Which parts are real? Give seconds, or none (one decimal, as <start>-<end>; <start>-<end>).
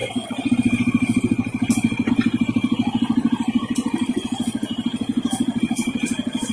0.0-6.5